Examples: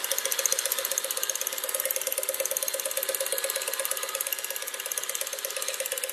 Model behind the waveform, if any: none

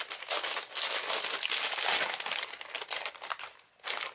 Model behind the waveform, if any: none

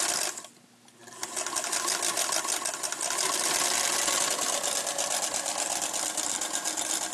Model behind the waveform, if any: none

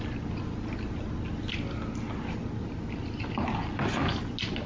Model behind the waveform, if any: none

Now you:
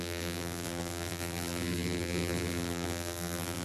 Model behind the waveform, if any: vocoder, BigVGAN v2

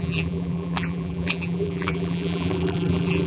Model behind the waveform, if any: vocoder, BigVGAN v2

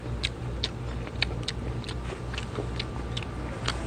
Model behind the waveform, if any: none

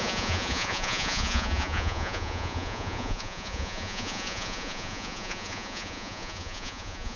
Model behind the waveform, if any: vocoder, Vocos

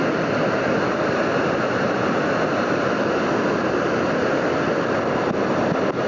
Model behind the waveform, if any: none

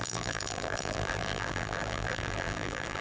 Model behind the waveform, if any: vocoder, BigVGAN v2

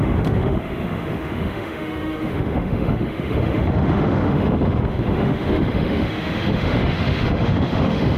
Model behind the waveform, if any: autoencoder, DAC-VAE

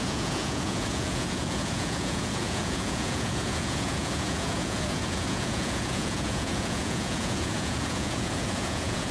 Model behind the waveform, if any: vocoder, Vocos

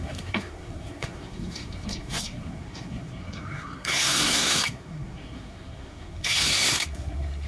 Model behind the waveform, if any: codec, SNAC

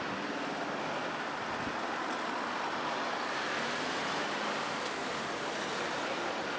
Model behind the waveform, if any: none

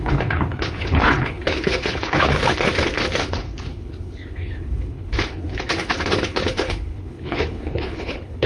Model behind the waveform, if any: codec, HILCodec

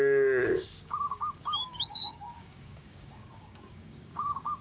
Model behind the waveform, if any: codec, DAC